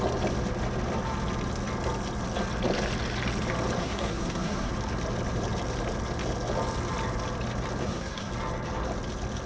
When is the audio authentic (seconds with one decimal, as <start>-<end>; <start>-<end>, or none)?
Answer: 0.0-3.8; 4.7-7.8; 8.3-9.5